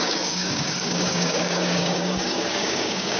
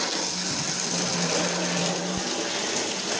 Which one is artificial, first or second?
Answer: first